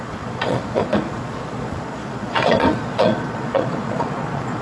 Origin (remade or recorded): remade